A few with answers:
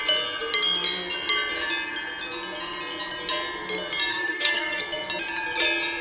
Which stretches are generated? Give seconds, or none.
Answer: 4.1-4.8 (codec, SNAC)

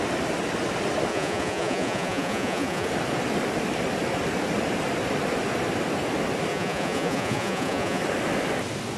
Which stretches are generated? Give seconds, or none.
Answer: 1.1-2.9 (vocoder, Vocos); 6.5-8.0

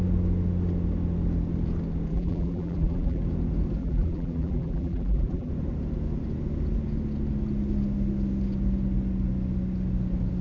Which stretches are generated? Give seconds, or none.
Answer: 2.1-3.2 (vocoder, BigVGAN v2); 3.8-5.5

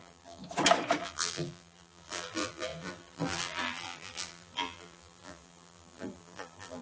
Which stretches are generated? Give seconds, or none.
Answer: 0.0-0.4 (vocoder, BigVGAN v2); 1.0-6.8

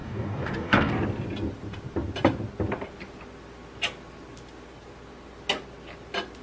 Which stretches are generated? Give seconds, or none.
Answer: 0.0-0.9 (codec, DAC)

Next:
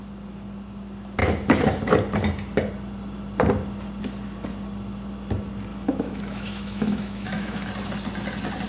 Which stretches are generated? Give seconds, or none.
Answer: 5.7-7.7 (autoencoder, DAC-VAE)

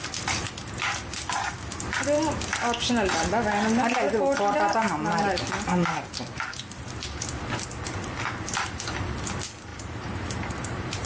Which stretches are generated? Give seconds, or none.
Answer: 9.7-11.1 (vocoder, BigVGAN v2)